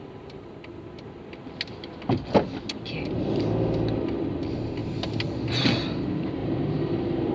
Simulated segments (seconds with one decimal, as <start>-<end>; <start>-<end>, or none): 6.4-7.3